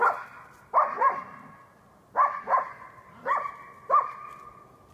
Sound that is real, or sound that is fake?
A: real